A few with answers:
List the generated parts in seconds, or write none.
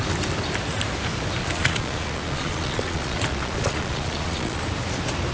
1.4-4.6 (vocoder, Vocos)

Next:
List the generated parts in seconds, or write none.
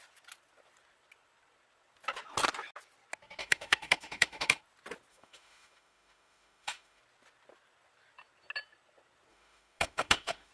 3.4-4.6 (autoencoder, DAC-VAE); 5.1-7.0; 9.3-10.5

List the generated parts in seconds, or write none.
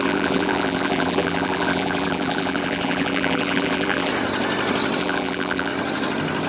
0.0-4.1 (vocoder, BigVGAN v2); 5.0-5.7